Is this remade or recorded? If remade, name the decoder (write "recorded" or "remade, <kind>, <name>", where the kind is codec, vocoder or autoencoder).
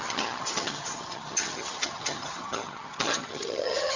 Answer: remade, vocoder, HiFi-GAN